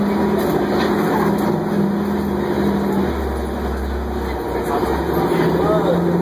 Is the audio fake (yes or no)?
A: no